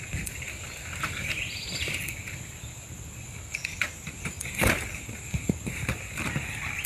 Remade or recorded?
remade